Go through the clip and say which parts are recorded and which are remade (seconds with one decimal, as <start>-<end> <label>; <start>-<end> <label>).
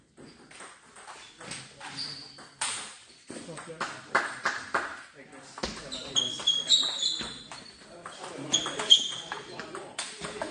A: 0.0-3.0 recorded; 3.0-3.7 remade; 3.7-10.5 recorded